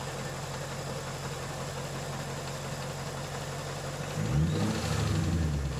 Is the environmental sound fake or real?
real